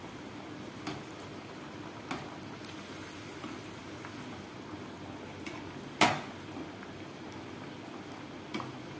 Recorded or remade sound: recorded